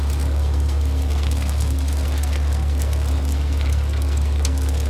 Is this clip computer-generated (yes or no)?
yes